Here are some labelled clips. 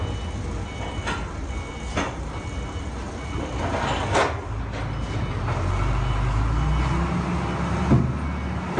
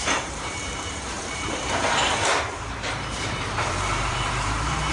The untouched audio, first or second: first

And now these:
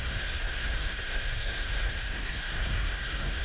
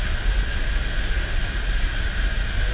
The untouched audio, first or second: second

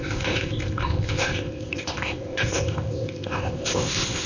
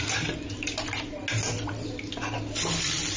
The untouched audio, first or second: second